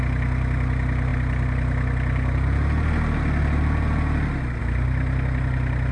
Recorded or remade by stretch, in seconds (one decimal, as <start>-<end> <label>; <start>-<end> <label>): 0.0-5.9 recorded